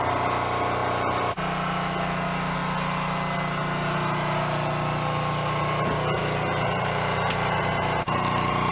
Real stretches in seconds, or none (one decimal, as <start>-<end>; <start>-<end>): 0.0-8.7